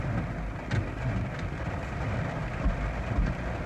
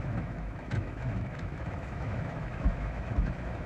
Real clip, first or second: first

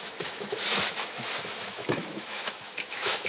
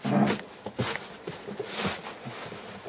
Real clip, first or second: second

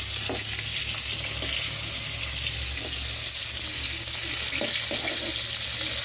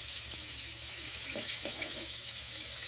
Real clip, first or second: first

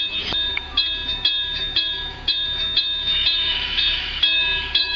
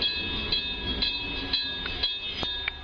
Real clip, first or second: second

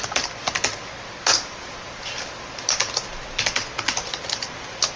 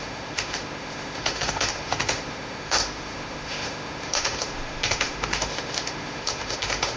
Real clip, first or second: first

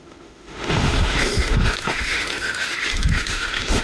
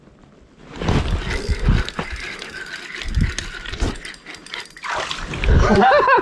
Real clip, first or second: second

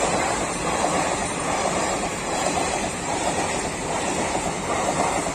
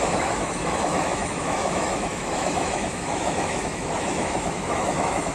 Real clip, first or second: first